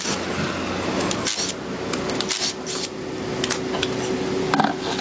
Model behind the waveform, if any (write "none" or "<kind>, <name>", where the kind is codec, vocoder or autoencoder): none